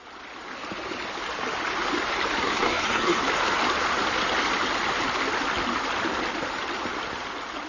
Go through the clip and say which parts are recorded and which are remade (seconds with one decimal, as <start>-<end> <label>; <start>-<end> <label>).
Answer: 0.0-2.4 recorded; 2.4-3.2 remade; 3.2-7.7 recorded